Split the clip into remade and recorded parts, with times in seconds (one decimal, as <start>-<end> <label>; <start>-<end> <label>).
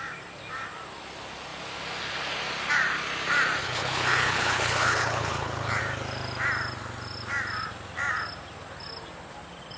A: 0.0-3.6 recorded; 3.6-5.8 remade; 5.8-9.8 recorded